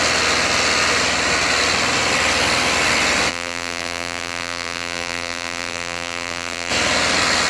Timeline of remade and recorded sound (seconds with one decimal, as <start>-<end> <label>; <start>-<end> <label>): 0.0-3.3 recorded; 3.3-6.7 remade; 6.7-7.5 recorded